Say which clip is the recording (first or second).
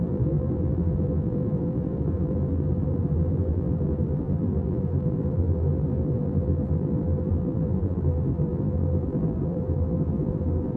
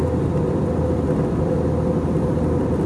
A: second